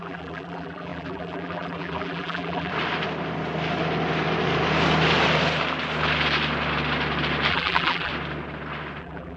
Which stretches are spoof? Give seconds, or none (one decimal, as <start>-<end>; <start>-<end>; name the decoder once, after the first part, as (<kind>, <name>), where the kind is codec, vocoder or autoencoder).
0.0-2.7 (vocoder, BigVGAN v2); 7.5-8.1; 9.0-9.4